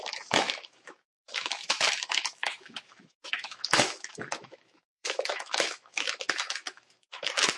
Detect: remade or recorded remade